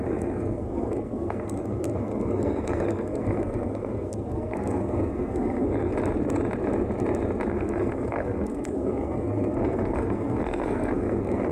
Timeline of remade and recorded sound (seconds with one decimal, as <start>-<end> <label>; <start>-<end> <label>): 0.0-5.9 remade; 5.9-7.5 recorded; 7.5-11.5 remade